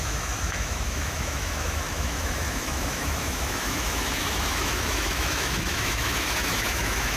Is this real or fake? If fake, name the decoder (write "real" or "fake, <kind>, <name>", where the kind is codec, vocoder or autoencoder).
fake, autoencoder, DAC-VAE